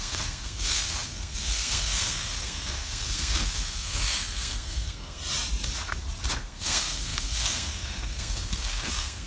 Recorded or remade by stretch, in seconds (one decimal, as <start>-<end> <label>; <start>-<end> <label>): 0.0-5.2 remade; 5.2-6.3 recorded; 6.3-9.3 remade